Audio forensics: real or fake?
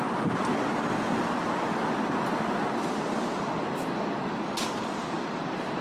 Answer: real